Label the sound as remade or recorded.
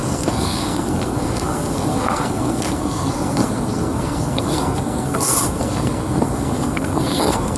remade